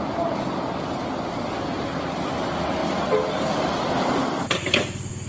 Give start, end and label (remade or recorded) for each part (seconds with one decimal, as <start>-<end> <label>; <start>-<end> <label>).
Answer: 0.0-5.3 recorded